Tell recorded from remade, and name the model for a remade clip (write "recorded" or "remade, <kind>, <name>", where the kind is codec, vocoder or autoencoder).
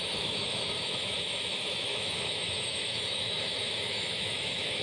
remade, autoencoder, DAC-VAE